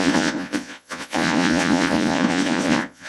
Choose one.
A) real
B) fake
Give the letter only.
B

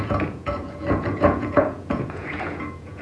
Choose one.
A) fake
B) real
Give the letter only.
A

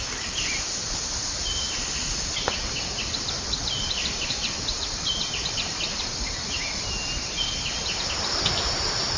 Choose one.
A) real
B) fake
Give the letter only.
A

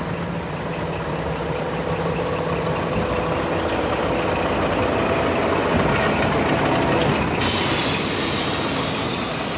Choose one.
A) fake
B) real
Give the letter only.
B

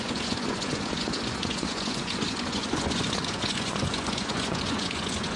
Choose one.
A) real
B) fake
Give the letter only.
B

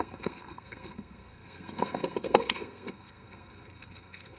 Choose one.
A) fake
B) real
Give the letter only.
A